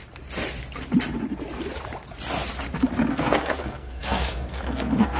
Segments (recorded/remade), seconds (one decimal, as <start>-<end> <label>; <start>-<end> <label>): 0.0-3.1 recorded; 3.1-5.2 remade